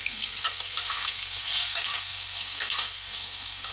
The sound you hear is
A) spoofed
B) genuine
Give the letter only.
A